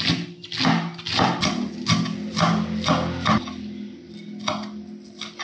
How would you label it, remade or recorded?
recorded